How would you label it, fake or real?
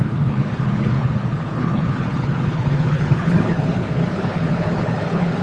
fake